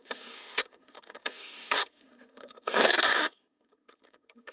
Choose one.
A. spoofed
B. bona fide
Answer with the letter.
A